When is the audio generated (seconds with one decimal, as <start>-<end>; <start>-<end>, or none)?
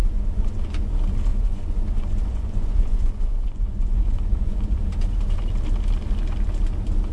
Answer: 0.0-0.9; 1.3-4.8